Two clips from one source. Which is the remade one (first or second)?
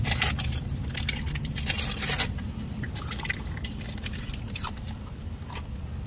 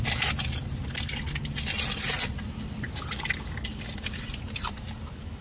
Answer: first